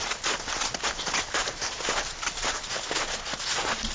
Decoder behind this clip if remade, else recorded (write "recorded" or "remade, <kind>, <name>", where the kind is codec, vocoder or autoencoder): recorded